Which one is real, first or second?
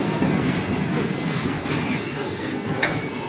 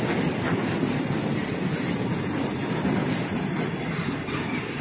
second